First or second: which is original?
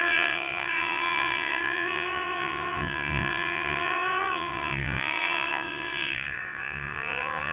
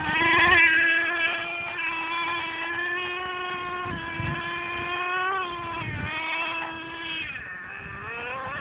second